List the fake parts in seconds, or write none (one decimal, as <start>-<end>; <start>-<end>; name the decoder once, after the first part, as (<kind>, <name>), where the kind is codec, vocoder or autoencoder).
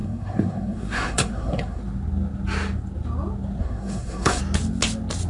0.0-1.8 (codec, SNAC); 3.6-4.4